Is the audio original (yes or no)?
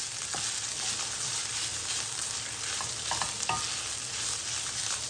yes